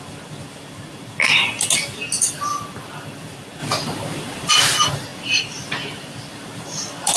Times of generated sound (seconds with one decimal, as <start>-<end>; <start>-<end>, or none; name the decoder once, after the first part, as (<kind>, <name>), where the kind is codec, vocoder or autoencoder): 3.6-4.5 (vocoder, BigVGAN v2); 5.1-7.2